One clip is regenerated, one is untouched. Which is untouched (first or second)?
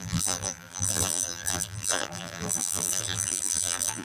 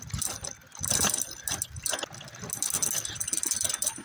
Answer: second